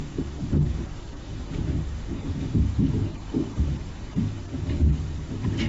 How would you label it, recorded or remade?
remade